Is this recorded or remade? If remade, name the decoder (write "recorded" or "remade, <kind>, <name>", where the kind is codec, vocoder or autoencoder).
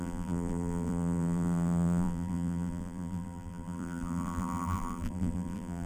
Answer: remade, vocoder, BigVGAN v2